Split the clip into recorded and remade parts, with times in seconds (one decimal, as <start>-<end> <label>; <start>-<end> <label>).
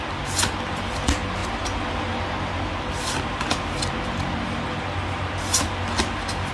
0.0-6.5 recorded